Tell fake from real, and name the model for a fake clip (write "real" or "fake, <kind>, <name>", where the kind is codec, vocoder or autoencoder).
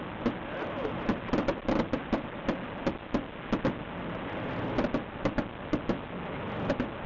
real